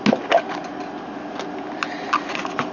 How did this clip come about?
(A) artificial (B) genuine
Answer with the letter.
B